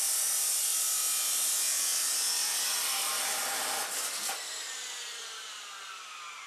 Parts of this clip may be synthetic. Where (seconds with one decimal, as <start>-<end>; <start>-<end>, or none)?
none